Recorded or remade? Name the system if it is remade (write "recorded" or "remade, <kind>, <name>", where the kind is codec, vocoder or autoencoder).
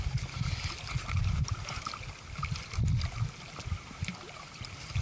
recorded